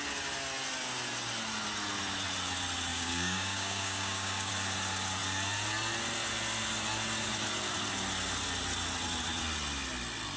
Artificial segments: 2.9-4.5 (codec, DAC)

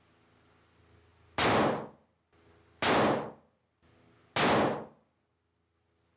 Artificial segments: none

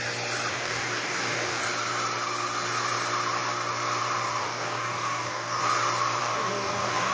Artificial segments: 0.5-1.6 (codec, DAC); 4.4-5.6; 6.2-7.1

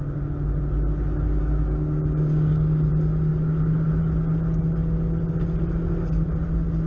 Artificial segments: 1.4-2.9 (codec, DAC)